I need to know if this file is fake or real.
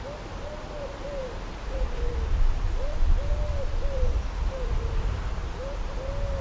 real